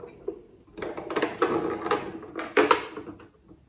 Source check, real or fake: real